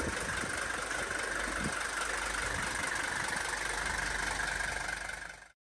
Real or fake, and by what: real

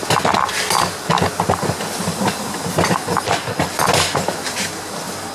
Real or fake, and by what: real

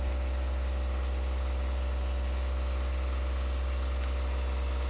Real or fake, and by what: real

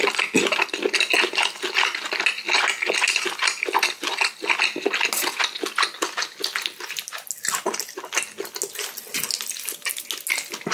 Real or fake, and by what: real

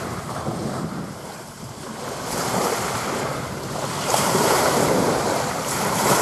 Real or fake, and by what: fake, vocoder, BigVGAN v2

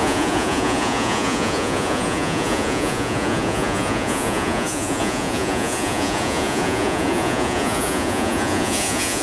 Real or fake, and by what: fake, vocoder, Vocos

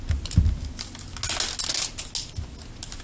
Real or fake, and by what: real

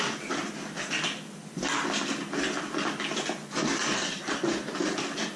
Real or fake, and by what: real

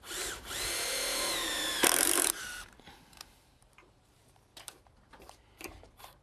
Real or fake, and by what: fake, vocoder, BigVGAN v2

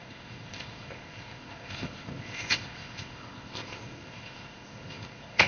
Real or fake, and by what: fake, codec, ZipCodec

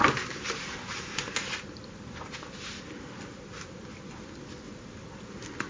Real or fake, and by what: real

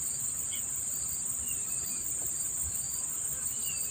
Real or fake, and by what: real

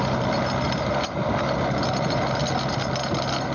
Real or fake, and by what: real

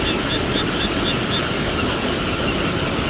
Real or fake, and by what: real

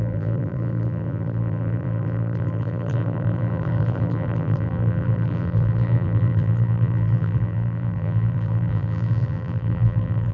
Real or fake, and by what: fake, vocoder, BigVGAN v2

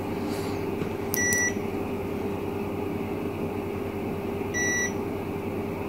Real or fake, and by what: real